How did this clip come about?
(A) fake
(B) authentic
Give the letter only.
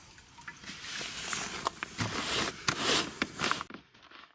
B